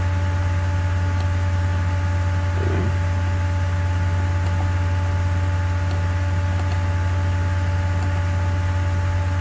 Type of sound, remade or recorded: recorded